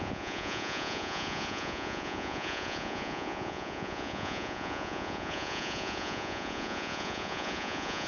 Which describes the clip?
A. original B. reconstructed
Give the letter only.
B